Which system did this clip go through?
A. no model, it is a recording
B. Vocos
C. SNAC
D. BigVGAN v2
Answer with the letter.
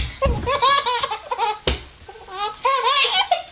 A